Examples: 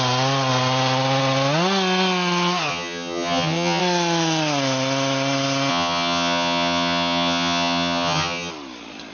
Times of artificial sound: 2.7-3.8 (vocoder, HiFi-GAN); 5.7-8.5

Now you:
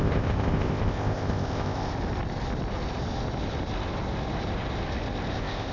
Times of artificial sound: 0.0-1.9 (codec, ZipCodec); 5.3-5.7

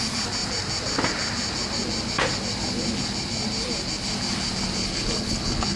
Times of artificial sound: 4.8-5.8 (codec, HILCodec)

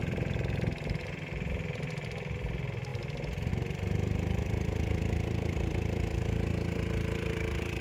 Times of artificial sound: 0.0-2.9 (vocoder, BigVGAN v2); 3.5-7.8